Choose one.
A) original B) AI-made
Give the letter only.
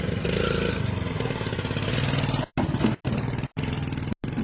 A